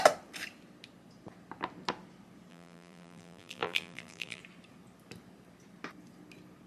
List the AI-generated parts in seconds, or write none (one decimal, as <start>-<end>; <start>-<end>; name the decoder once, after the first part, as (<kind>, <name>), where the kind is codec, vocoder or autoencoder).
2.5-4.4 (vocoder, BigVGAN v2)